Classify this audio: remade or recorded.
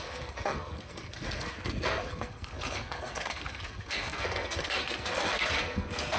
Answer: remade